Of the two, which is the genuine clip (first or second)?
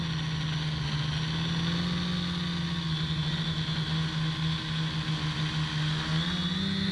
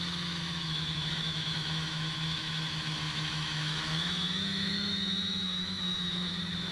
first